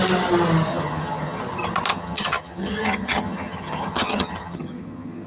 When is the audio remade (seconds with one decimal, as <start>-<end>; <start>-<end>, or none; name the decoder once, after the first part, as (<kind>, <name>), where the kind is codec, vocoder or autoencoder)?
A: 0.7-1.4 (vocoder, HiFi-GAN); 1.9-5.3